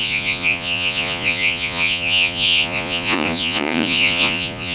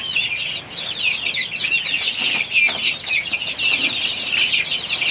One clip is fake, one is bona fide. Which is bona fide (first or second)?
second